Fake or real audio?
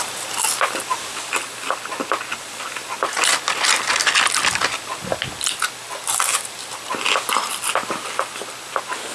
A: real